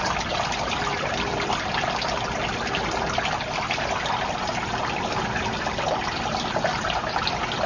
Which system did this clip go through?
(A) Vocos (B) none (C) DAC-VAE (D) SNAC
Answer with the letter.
B